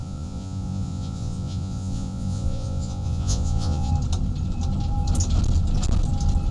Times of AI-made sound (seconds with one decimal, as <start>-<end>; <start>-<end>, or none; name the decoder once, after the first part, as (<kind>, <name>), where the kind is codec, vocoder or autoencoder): 0.0-3.9 (vocoder, Vocos)